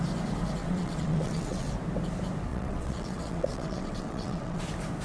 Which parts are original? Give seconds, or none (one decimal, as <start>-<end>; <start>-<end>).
0.0-0.6; 1.7-2.5; 4.6-5.0